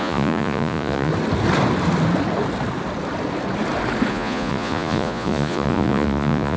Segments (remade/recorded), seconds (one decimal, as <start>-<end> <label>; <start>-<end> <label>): 0.0-1.1 remade; 1.1-4.1 recorded; 4.1-6.6 remade